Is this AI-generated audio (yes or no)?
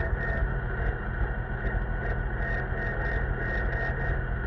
no